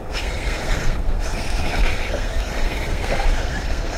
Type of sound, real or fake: fake